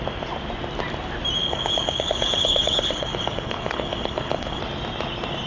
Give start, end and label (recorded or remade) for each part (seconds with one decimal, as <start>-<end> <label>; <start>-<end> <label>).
0.0-1.4 recorded; 1.4-4.6 remade; 4.6-5.5 recorded